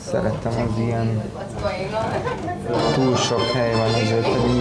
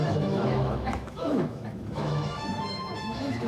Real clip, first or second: first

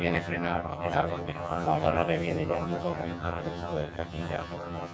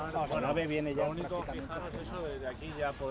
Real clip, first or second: second